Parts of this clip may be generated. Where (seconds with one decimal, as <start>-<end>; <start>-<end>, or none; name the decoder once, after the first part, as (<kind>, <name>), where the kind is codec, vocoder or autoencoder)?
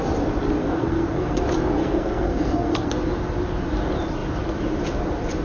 0.6-1.4 (codec, SNAC); 1.8-2.9